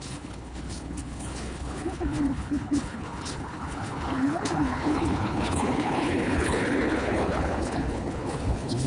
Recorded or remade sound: remade